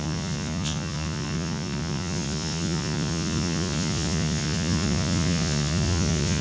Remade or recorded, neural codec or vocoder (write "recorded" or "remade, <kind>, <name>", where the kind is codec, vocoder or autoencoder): remade, vocoder, Vocos